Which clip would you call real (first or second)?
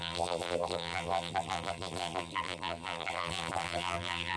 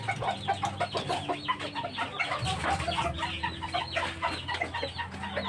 second